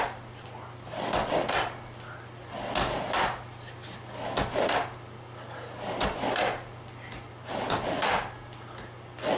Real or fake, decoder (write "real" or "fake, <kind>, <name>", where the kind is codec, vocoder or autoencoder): real